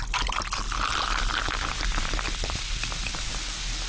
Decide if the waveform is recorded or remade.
recorded